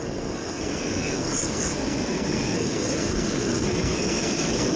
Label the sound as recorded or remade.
remade